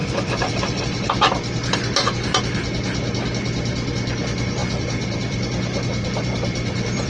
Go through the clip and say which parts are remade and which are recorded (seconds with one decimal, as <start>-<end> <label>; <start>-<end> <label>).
0.0-0.8 remade; 0.8-4.6 recorded; 4.6-7.1 remade